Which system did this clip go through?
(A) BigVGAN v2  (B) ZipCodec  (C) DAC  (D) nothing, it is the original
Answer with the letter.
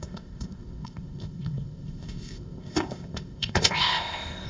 B